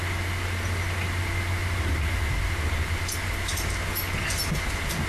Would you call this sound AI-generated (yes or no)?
no